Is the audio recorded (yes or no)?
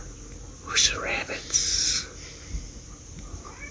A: yes